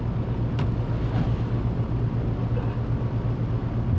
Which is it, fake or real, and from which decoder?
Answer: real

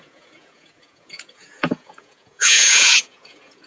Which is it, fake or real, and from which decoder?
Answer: fake, vocoder, Vocos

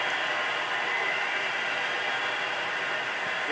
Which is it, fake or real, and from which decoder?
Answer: real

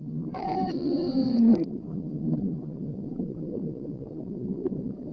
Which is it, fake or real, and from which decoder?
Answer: fake, vocoder, WaveNeXt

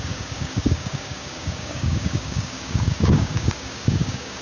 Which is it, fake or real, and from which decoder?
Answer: fake, codec, DAC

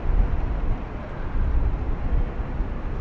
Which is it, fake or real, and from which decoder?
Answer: real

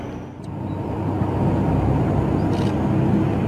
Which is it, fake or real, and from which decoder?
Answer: real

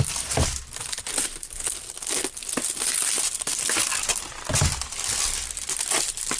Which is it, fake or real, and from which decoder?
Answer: real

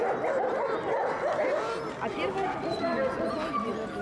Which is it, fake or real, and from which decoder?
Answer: real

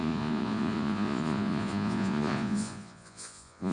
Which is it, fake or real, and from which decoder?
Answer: fake, vocoder, Vocos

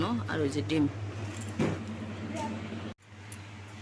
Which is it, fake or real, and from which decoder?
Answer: real